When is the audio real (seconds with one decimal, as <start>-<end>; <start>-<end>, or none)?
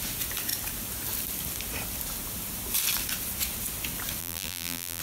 0.0-4.2